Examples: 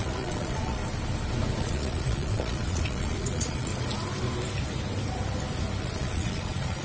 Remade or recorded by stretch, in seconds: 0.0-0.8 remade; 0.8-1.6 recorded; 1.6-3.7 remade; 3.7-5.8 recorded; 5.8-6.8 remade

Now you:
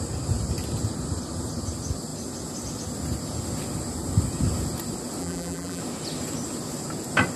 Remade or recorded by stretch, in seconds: 0.0-5.2 recorded; 5.2-5.8 remade; 5.8-7.4 recorded

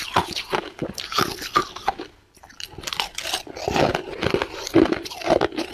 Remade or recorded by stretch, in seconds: 0.0-5.7 recorded

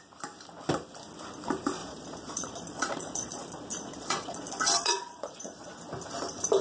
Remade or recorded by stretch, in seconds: 0.0-1.8 recorded; 1.8-5.8 remade; 5.8-6.6 recorded

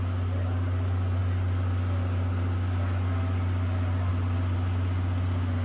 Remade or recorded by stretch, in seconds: 0.0-5.6 recorded

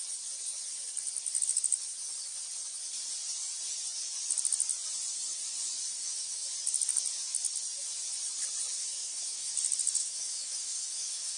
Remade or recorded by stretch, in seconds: 0.0-5.9 recorded; 5.9-6.5 remade; 6.5-9.0 recorded; 9.0-9.5 remade; 9.5-10.0 recorded; 10.0-11.4 remade